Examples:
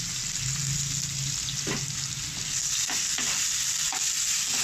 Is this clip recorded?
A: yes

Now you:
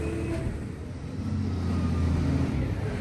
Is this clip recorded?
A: yes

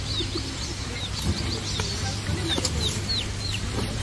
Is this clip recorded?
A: yes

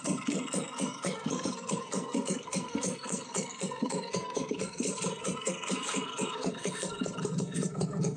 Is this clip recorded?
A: no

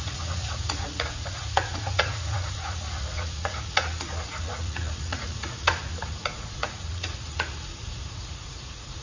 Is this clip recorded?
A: no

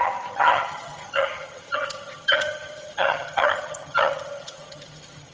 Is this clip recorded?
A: no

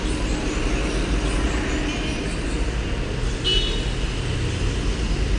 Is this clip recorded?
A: yes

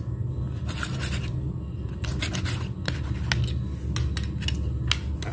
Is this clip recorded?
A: yes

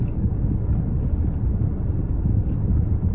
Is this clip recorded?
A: yes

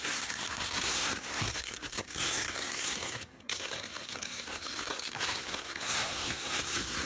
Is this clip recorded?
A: no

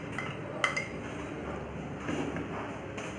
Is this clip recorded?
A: yes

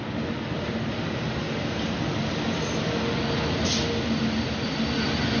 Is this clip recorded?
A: yes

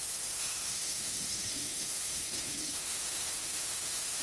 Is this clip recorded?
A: no